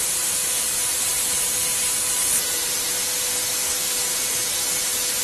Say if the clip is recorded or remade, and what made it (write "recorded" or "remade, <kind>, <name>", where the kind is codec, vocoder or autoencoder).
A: recorded